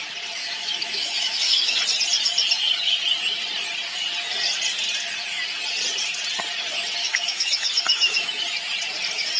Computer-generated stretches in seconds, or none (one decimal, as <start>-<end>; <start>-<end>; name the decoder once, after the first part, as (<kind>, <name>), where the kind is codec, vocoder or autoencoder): 0.4-1.8 (autoencoder, DAC-VAE); 7.0-8.4